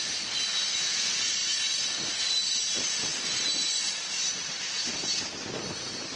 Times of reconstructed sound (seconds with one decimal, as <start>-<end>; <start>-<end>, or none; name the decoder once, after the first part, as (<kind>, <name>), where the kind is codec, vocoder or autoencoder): none